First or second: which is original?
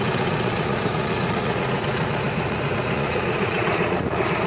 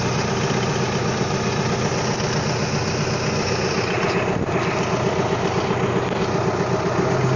second